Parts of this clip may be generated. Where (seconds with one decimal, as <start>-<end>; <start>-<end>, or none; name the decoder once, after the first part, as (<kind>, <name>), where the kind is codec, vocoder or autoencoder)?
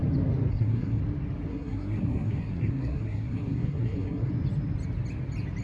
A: 0.5-1.0 (codec, SNAC); 1.5-4.3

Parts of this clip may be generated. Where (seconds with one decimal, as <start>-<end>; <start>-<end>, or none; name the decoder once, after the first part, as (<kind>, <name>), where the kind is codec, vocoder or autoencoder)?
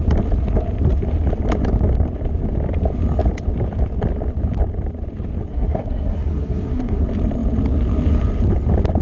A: 5.5-7.0 (codec, SNAC)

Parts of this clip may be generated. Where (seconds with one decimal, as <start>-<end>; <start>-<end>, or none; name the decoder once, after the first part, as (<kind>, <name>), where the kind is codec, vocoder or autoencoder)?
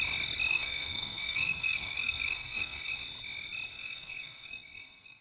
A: 0.5-2.9 (codec, SNAC); 3.7-5.2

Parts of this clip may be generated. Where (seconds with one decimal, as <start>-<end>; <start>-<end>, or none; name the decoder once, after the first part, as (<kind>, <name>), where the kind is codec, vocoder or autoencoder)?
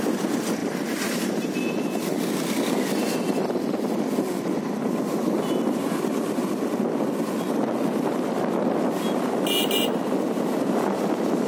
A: none